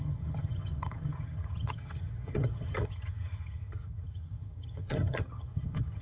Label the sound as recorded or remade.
remade